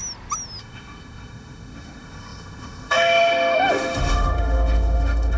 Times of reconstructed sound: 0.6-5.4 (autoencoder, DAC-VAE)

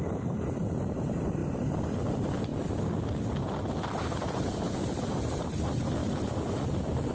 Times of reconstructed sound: 0.0-1.4 (vocoder, BigVGAN v2); 2.1-2.5; 3.6-6.0

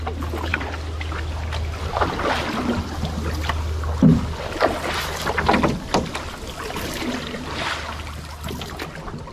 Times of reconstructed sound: 0.5-1.2 (vocoder, BigVGAN v2)

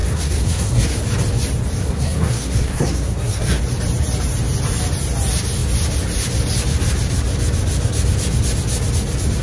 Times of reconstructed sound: 0.0-1.0 (codec, SNAC); 1.8-3.6

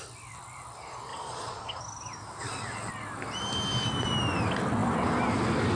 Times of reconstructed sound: 1.1-1.8 (vocoder, Vocos); 2.4-2.9

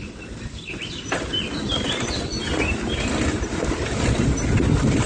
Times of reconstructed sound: none

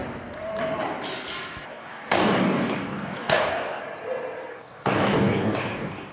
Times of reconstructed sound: 1.7-3.8 (codec, DAC); 4.5-6.1

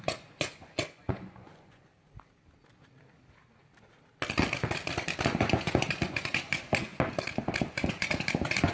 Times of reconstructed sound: 0.0-1.9 (vocoder, Vocos); 5.4-6.9; 7.7-8.7